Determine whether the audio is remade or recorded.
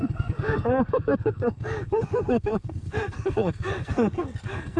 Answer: remade